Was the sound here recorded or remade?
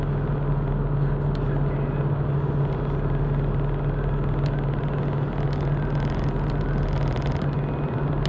recorded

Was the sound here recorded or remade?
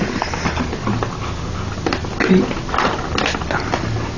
recorded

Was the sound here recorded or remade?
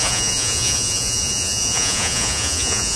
remade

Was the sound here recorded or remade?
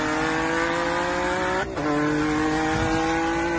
recorded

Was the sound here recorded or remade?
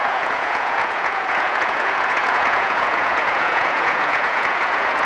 remade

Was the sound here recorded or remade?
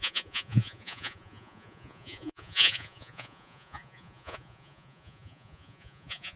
remade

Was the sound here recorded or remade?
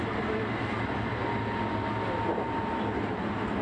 recorded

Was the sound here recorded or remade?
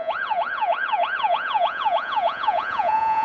remade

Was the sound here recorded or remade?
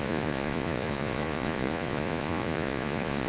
remade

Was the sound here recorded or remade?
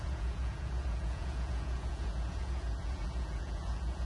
remade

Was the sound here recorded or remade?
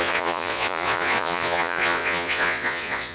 remade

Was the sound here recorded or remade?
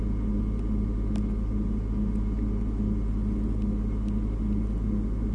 recorded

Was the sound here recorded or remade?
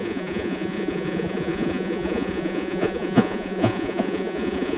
remade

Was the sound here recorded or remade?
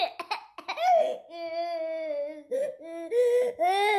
recorded